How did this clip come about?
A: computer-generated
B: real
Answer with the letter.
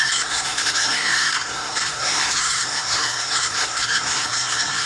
A